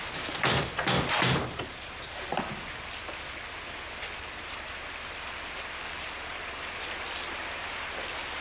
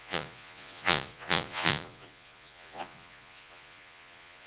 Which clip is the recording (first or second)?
first